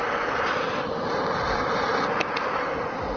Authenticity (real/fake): real